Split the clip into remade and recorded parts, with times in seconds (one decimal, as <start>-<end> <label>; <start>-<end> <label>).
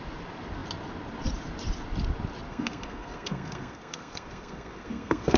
0.0-2.5 recorded; 2.5-5.4 remade